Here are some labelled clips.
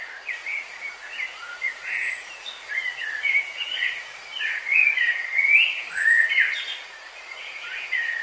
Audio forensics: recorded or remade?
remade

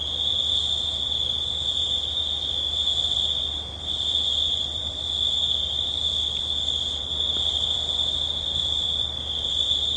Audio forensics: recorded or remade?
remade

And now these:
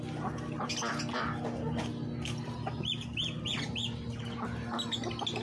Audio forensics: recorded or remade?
recorded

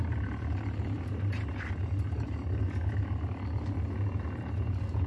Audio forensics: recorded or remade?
remade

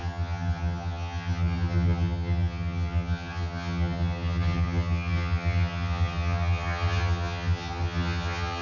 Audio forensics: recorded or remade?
remade